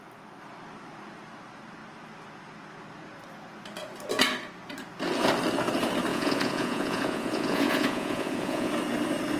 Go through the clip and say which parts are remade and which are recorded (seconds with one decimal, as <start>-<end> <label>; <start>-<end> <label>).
0.0-6.1 recorded; 6.1-8.7 remade; 8.7-9.4 recorded